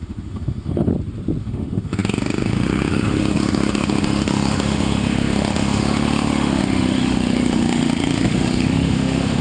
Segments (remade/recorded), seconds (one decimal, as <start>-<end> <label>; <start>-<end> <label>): 0.0-0.9 remade; 0.9-1.4 recorded; 1.4-9.4 remade